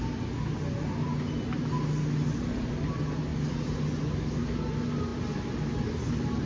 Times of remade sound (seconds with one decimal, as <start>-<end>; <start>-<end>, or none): none